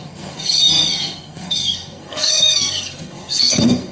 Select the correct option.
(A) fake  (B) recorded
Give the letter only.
A